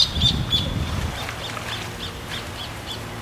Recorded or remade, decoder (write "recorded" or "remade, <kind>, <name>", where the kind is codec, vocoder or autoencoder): recorded